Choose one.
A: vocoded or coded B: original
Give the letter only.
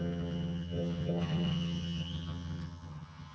A